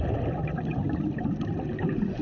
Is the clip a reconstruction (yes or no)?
yes